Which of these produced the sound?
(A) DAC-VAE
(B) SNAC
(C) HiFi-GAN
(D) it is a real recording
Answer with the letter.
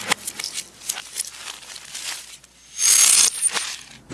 D